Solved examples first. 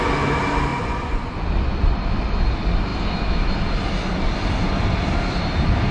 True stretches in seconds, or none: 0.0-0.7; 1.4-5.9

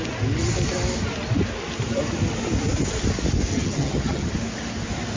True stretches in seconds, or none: 0.0-3.5; 4.3-5.2

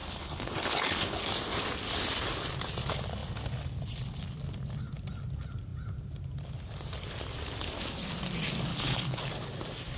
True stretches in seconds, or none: 1.2-8.7; 9.2-10.0

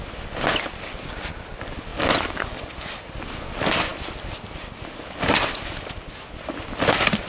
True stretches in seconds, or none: 0.0-7.3

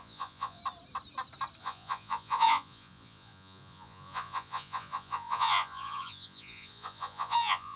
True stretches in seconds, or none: 0.6-1.6

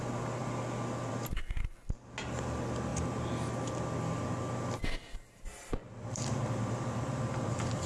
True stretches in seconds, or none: 0.0-7.9

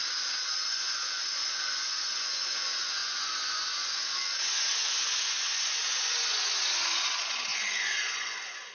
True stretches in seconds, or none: 0.0-0.7